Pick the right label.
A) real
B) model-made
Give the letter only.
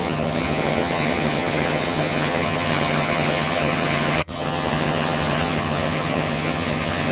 B